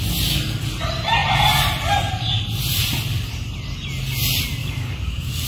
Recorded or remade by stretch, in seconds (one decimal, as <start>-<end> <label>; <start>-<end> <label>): 0.0-4.6 recorded; 4.6-5.5 remade